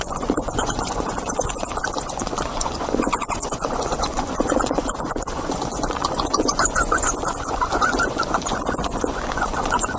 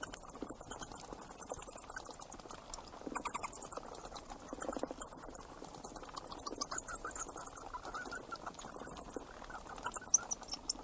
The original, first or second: second